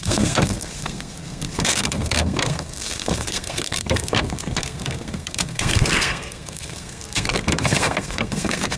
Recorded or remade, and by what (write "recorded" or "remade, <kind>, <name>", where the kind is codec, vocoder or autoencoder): remade, codec, SNAC